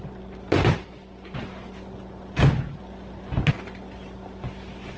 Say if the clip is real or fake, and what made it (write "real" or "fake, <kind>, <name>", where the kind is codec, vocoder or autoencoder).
real